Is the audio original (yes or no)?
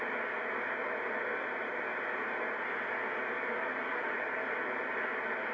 yes